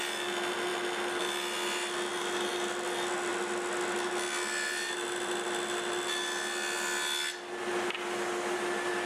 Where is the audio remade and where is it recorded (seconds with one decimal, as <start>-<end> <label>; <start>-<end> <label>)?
0.0-9.1 recorded